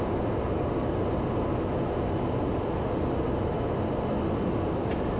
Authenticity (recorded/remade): recorded